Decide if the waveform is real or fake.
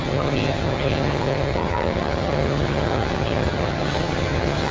fake